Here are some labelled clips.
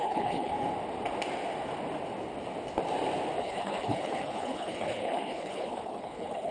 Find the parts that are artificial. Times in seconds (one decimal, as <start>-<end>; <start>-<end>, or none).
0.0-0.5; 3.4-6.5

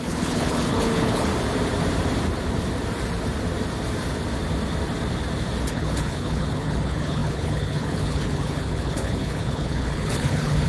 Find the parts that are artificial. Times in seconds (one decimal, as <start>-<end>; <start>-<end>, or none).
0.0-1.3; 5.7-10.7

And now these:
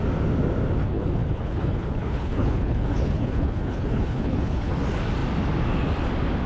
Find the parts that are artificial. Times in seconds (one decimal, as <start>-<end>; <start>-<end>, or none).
0.8-4.7

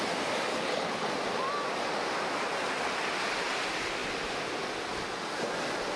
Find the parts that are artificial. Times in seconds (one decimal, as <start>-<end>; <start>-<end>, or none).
0.5-1.1

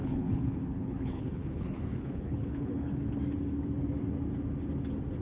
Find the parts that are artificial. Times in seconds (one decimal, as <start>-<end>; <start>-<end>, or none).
0.0-3.1

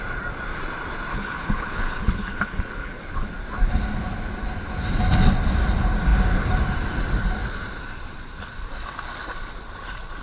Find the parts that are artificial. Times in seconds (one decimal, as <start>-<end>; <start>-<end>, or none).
1.1-3.3

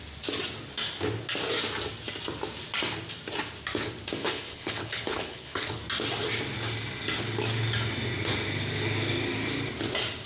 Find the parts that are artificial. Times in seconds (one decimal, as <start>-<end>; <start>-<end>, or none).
4.2-5.8

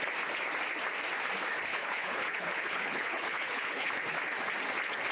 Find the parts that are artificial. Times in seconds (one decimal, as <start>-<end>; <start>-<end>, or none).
1.7-3.9